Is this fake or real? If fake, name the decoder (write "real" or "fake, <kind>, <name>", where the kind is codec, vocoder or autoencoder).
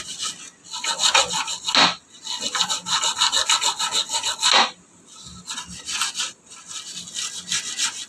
real